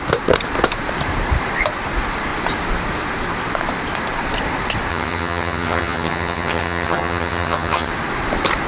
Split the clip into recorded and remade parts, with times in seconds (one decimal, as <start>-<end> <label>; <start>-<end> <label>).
0.0-4.9 recorded; 4.9-7.9 remade; 7.9-8.7 recorded